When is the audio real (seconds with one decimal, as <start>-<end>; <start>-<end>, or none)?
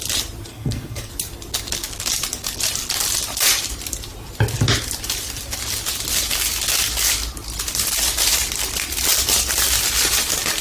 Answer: 0.0-0.5; 1.1-10.6